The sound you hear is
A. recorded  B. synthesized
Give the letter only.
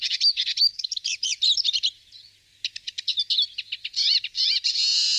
B